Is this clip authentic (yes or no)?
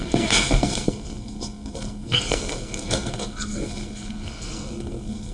no